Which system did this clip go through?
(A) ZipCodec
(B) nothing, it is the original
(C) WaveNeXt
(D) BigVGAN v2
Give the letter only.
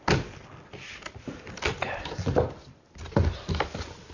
B